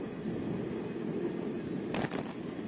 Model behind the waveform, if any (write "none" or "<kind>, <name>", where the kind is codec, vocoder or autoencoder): none